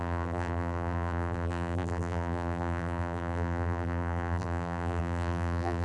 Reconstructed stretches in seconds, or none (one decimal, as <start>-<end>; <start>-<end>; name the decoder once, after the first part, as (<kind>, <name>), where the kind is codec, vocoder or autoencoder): 0.0-5.8 (vocoder, BigVGAN v2)